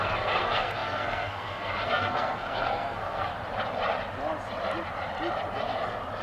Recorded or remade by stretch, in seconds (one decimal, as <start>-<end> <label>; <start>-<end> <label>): 0.0-3.3 remade; 3.3-6.2 recorded